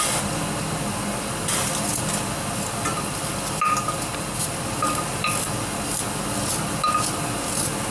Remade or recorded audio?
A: recorded